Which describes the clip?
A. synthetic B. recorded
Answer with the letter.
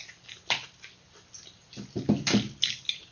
B